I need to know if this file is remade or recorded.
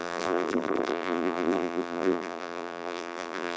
remade